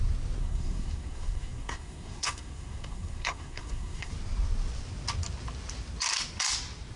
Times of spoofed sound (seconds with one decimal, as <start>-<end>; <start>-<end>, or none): 0.4-4.1